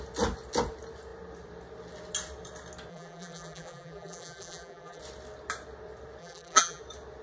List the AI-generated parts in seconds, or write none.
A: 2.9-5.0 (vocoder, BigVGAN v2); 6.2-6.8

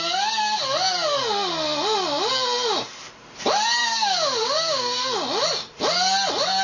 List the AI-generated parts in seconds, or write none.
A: 3.8-5.0 (codec, DAC)